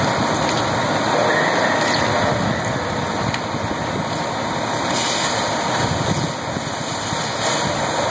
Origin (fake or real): real